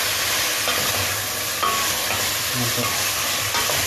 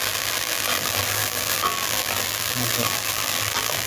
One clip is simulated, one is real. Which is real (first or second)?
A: first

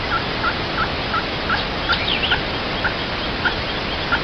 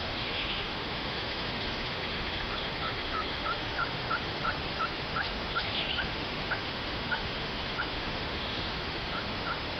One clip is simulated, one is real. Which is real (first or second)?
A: first